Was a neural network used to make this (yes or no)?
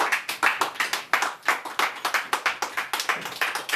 no